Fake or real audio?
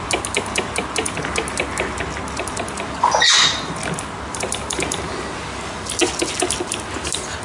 real